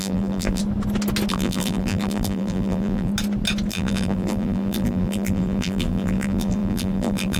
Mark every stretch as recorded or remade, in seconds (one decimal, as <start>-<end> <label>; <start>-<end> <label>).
0.0-0.6 remade; 0.6-1.3 recorded; 1.3-3.1 remade; 3.1-3.7 recorded; 3.7-7.4 remade